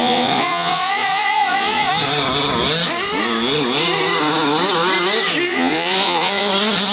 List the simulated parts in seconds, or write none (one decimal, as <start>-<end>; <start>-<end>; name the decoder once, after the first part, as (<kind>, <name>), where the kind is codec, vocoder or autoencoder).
0.0-1.9 (vocoder, Vocos); 5.5-6.5

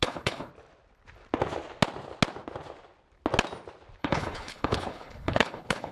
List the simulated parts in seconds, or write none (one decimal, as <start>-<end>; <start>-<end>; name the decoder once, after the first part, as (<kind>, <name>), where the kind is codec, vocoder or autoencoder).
0.0-0.5 (codec, HILCodec); 4.0-5.9

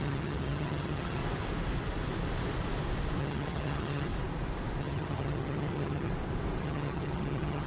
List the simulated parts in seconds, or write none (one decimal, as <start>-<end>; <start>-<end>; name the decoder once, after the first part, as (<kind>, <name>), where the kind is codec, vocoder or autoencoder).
0.0-1.2 (vocoder, HiFi-GAN); 3.2-4.1; 4.8-6.1; 6.6-7.7